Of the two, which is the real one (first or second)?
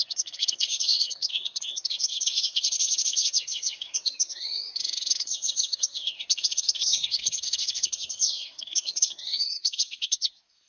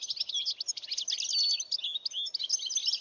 second